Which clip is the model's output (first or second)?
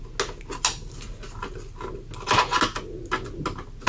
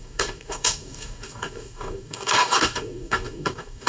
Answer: second